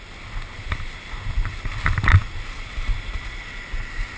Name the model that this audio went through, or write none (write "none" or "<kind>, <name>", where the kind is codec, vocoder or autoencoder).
none